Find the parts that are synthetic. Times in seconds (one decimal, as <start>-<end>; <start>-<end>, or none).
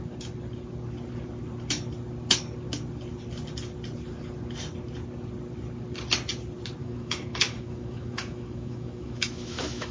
6.8-9.9